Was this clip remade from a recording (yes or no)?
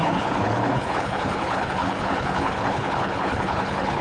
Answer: yes